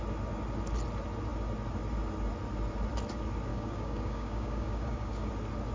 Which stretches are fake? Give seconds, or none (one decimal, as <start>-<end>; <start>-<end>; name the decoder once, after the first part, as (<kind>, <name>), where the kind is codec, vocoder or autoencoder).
3.5-5.3 (codec, DAC)